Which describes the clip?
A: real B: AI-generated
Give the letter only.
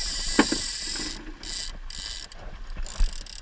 A